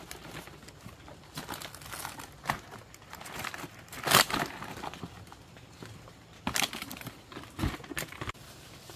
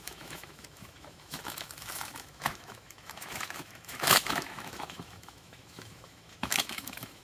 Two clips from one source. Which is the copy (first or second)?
second